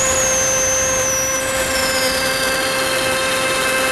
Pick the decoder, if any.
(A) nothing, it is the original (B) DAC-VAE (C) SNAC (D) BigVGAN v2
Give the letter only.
A